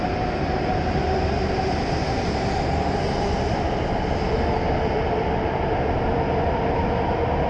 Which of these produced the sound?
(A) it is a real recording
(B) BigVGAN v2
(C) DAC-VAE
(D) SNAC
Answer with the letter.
A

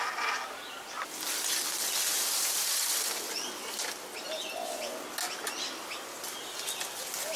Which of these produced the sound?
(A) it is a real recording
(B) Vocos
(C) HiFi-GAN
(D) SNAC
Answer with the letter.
A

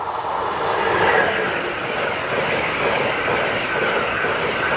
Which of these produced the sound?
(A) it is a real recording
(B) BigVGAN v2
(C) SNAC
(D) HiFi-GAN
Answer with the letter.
A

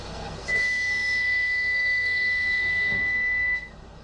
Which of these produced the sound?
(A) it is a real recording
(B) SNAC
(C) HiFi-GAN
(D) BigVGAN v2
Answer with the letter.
B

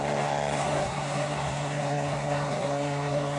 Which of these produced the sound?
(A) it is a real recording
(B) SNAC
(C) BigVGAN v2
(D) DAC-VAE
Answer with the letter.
B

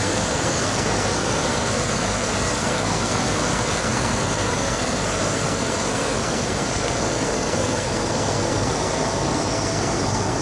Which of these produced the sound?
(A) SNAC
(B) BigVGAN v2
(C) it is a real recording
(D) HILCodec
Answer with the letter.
A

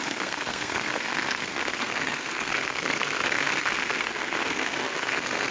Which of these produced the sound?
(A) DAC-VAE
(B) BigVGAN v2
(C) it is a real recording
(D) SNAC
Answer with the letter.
D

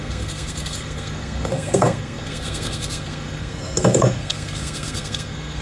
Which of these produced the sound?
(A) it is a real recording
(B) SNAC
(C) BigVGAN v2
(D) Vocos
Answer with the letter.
B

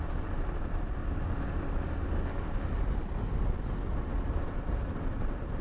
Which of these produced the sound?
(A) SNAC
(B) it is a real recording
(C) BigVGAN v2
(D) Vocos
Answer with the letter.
B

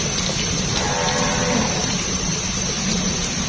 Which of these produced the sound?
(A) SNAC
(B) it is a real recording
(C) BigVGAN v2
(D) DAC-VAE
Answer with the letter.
B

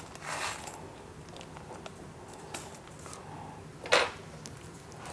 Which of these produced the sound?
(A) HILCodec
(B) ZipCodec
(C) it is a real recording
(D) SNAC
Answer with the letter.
C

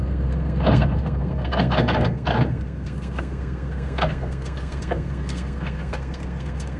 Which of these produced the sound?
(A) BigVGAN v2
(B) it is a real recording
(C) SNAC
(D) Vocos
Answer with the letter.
C